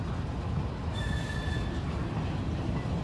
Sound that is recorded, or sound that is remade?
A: recorded